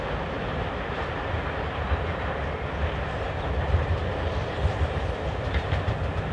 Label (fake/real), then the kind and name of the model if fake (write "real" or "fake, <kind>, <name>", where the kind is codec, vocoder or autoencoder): real